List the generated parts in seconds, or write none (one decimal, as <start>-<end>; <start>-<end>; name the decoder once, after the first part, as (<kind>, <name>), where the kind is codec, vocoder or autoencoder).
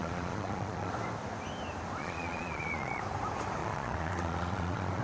0.0-0.9 (vocoder, Vocos); 2.0-3.0; 3.6-5.0